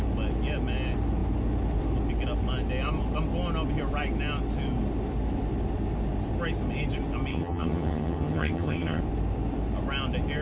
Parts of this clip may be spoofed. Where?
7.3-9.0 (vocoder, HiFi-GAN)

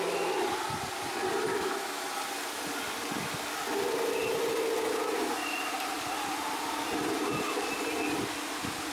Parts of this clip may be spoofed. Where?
1.5-2.1 (autoencoder, DAC-VAE)

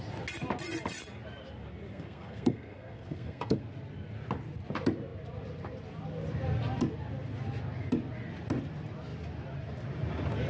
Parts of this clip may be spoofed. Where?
1.9-3.6 (codec, SNAC)

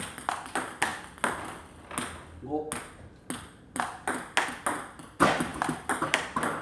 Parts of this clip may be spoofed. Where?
none

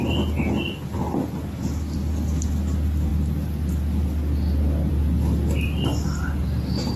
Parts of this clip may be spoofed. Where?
none

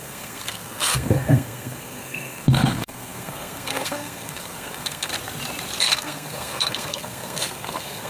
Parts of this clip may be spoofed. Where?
0.0-5.1 (codec, SNAC); 5.8-8.1

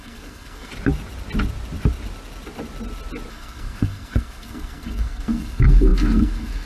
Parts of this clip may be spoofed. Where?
0.0-0.7 (codec, SNAC); 3.3-6.7